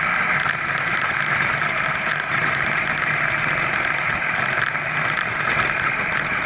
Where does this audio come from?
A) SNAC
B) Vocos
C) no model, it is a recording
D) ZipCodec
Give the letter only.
C